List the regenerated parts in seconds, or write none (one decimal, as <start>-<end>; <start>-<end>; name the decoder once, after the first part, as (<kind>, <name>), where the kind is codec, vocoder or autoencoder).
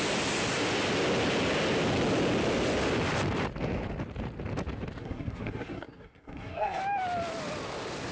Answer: 5.0-6.8 (codec, SNAC)